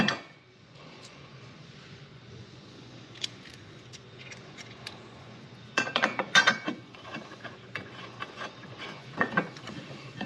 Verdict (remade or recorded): remade